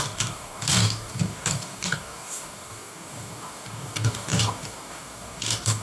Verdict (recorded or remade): remade